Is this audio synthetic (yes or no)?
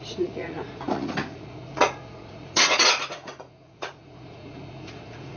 yes